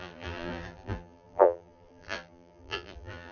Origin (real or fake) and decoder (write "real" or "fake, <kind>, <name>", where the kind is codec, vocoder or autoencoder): fake, vocoder, BigVGAN v2